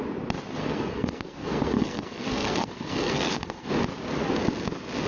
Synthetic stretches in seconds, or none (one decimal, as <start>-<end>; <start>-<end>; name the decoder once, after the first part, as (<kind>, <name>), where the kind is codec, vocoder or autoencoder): 0.6-3.7 (codec, SNAC)